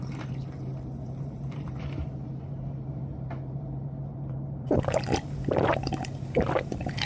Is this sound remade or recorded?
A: remade